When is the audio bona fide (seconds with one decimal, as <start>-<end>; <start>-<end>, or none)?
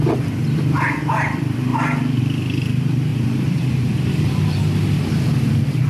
1.7-2.2